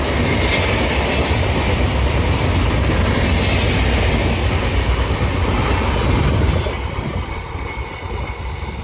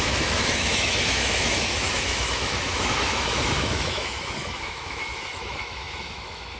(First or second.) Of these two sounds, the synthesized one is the second